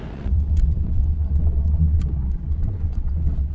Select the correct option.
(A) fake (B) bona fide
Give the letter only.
A